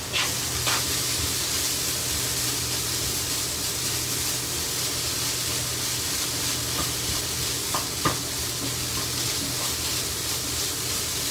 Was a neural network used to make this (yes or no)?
no